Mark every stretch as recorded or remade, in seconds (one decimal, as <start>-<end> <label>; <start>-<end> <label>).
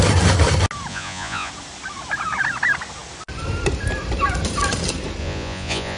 0.0-0.9 recorded; 0.9-1.5 remade; 1.5-5.2 recorded; 5.2-6.0 remade